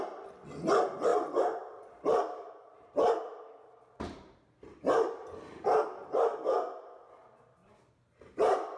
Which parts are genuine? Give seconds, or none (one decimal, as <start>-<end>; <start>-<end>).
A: 0.0-1.1; 6.1-7.6